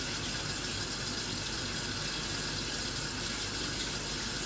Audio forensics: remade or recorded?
recorded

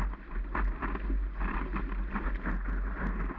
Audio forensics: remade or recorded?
recorded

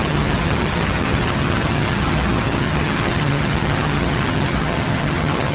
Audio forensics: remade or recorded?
remade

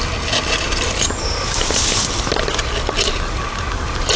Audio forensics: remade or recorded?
recorded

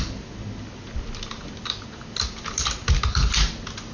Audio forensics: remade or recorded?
recorded